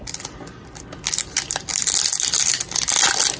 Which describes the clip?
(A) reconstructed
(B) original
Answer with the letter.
B